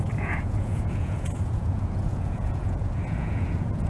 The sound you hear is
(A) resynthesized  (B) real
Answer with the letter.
A